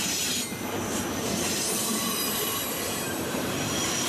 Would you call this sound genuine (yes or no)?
no